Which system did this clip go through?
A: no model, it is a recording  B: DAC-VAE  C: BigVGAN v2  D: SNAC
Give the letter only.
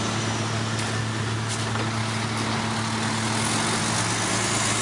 A